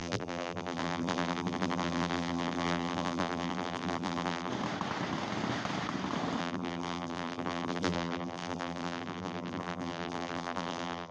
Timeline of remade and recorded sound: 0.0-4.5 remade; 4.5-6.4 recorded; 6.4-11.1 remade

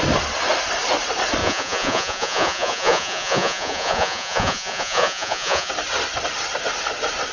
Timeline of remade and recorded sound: 0.0-1.4 recorded; 1.4-5.7 remade; 5.7-7.3 recorded

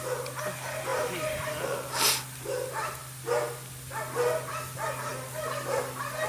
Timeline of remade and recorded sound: 0.0-0.9 recorded; 0.9-1.5 remade; 1.5-6.3 recorded

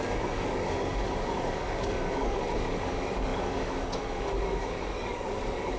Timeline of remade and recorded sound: 0.0-5.8 remade